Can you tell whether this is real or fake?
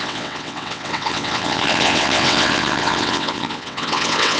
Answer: fake